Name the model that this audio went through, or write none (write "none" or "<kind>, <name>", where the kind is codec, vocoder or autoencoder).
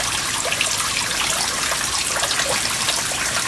vocoder, BigVGAN v2